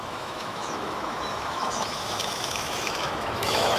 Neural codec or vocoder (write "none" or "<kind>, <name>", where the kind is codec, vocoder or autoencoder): autoencoder, DAC-VAE